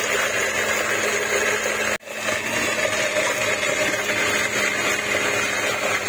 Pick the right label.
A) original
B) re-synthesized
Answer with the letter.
A